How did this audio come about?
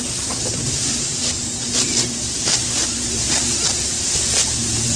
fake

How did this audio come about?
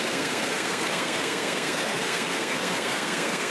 fake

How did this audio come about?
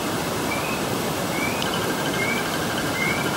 fake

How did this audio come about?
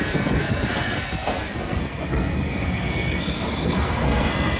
fake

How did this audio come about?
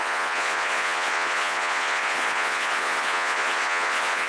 fake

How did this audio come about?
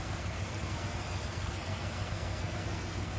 fake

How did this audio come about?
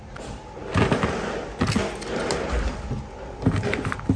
real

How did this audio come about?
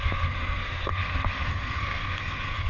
fake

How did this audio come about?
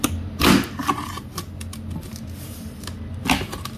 real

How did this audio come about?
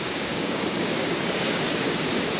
fake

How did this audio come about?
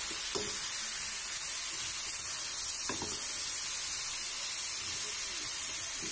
real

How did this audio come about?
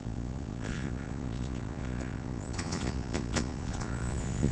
fake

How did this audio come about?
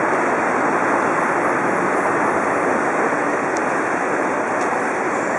real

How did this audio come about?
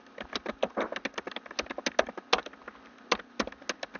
real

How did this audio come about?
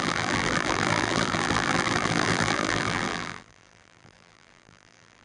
fake